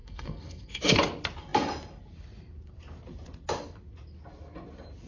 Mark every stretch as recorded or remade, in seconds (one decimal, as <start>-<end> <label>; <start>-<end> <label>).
0.0-1.0 remade; 1.0-5.1 recorded